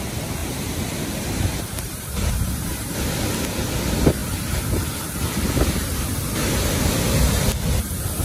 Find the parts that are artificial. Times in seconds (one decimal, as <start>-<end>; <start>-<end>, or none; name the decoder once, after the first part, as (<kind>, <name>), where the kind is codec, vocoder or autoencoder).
0.4-2.9 (vocoder, BigVGAN v2)